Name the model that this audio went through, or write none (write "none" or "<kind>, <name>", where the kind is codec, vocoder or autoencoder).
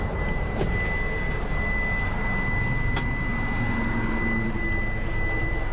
none